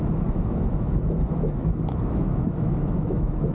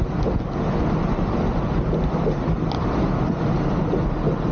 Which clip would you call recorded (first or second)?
second